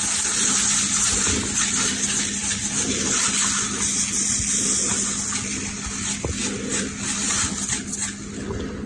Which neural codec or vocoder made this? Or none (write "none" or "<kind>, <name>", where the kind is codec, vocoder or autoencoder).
none